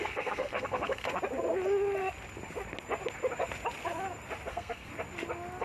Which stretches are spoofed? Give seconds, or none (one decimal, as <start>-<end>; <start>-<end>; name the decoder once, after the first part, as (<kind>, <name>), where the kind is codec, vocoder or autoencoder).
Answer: 0.0-1.1 (codec, SNAC); 4.5-4.9